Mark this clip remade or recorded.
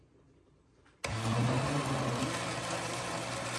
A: recorded